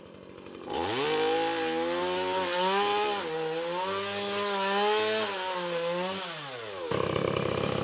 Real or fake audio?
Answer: real